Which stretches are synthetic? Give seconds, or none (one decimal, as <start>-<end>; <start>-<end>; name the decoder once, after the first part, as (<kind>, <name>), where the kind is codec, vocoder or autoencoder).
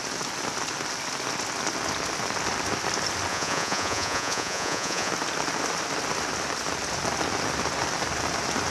3.3-5.1 (vocoder, Vocos)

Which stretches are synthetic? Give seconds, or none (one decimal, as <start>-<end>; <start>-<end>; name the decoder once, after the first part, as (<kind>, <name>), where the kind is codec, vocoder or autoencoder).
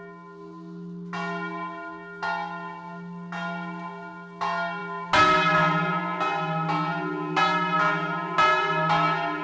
none